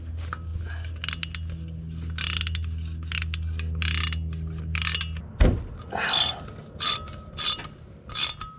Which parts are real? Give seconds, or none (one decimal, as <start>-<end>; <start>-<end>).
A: 0.0-8.6